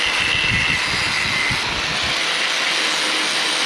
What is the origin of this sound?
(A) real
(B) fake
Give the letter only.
A